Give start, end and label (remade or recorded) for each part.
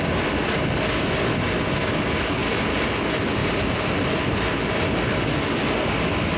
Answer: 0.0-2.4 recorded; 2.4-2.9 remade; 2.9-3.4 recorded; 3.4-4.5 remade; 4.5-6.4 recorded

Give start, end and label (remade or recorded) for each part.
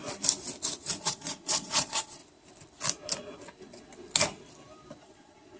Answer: 0.0-1.0 recorded; 1.0-2.2 remade; 2.2-5.0 recorded; 5.0-5.6 remade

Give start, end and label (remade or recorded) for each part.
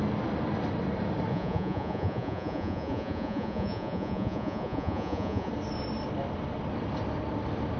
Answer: 0.0-1.3 recorded; 1.3-5.5 remade; 5.5-7.8 recorded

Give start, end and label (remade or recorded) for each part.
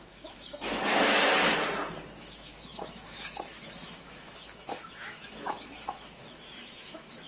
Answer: 0.0-0.9 remade; 0.9-2.2 recorded; 2.2-7.3 remade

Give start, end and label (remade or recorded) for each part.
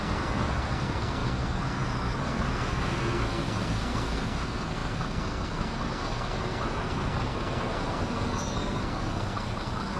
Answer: 0.0-10.0 remade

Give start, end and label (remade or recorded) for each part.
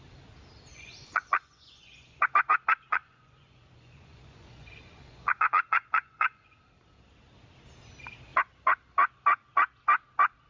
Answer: 0.0-0.7 recorded; 0.7-2.2 remade; 2.2-2.9 recorded; 2.9-6.6 remade; 6.6-10.5 recorded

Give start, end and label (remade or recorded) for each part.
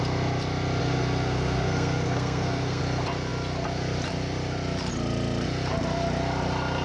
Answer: 0.0-0.8 recorded; 0.8-2.8 remade; 2.8-6.8 recorded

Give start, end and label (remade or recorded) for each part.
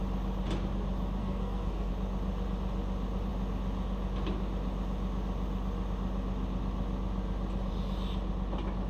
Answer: 0.0-1.2 recorded; 1.2-1.9 remade; 1.9-8.9 recorded